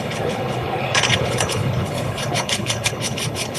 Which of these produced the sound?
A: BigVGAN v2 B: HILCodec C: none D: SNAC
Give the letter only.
B